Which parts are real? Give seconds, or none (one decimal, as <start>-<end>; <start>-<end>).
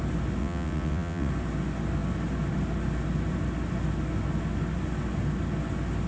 0.0-0.4; 1.3-6.1